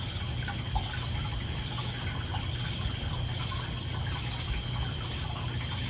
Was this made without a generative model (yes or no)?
yes